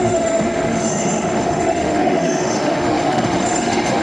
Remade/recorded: remade